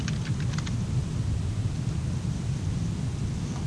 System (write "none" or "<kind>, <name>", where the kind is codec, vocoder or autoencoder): none